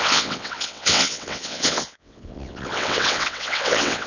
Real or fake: fake